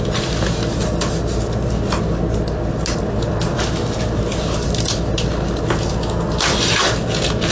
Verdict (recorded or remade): recorded